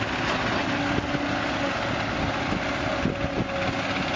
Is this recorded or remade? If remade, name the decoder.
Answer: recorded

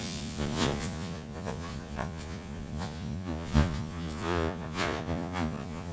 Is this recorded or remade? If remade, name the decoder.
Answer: remade, vocoder, Vocos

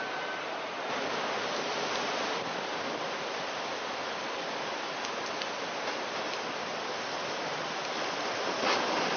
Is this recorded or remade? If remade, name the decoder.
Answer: recorded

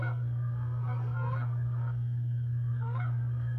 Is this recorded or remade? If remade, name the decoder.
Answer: remade, codec, SNAC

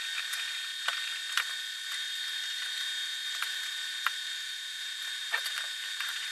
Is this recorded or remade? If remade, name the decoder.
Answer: recorded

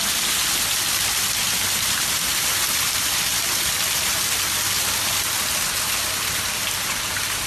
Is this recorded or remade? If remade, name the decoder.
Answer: recorded